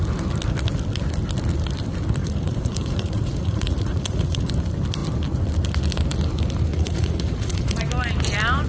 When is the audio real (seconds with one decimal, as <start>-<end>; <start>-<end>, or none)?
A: 0.0-2.2; 4.5-6.7; 7.8-8.7